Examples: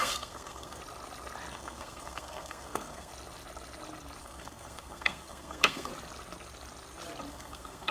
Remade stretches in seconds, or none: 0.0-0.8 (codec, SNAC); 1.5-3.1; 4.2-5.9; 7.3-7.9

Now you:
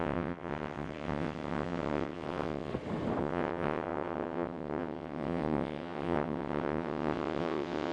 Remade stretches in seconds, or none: 0.0-2.7 (vocoder, WaveNeXt); 3.2-7.9

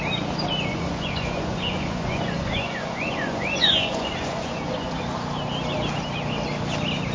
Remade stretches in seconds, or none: 0.7-5.0 (vocoder, Vocos)

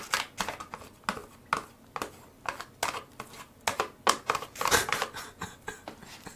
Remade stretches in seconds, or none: none

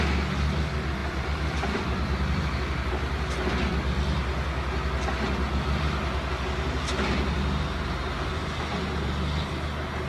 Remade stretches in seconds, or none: 1.0-2.9 (vocoder, BigVGAN v2)

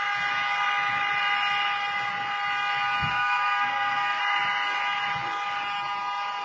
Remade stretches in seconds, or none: 3.1-4.2 (codec, SNAC)